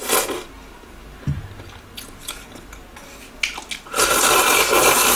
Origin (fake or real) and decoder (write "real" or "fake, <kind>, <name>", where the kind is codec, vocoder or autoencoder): real